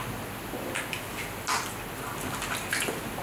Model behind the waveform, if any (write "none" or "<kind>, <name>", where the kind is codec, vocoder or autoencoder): none